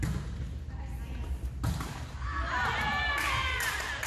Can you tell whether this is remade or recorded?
recorded